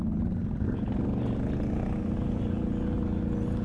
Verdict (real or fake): real